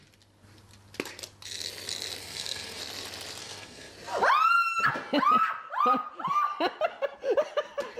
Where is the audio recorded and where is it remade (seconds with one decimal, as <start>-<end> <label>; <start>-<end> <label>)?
0.0-2.2 recorded; 2.2-2.8 remade; 2.8-3.4 recorded; 3.4-3.9 remade; 3.9-8.0 recorded